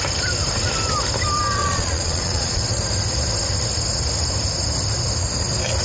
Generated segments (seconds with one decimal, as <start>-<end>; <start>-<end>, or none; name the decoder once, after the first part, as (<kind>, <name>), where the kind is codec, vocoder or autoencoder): 1.6-2.6 (vocoder, Vocos)